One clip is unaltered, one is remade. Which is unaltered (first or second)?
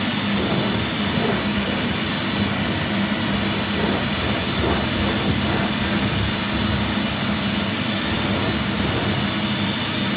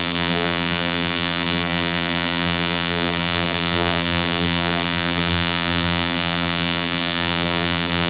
first